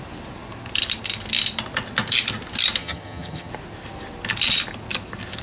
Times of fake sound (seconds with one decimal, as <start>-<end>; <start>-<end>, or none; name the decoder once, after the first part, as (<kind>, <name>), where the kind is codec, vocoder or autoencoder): 2.8-3.5 (vocoder, HiFi-GAN)